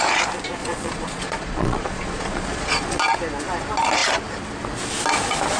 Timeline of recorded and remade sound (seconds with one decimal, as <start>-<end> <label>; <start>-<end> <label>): 0.0-0.6 recorded; 0.6-3.0 remade; 3.0-5.6 recorded